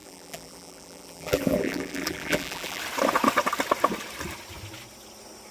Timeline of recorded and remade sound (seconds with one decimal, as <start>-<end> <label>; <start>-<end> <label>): 0.0-2.8 remade; 2.8-5.5 recorded